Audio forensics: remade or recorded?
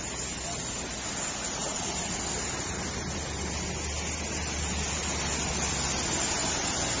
recorded